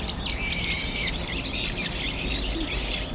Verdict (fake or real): real